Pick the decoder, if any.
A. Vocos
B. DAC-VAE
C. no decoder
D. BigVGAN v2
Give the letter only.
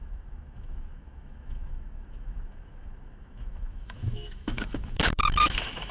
B